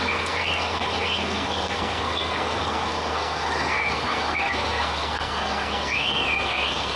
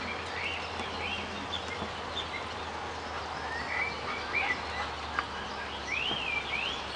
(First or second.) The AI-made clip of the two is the first